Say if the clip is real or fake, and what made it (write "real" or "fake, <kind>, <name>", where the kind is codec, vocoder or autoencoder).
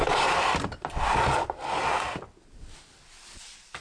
real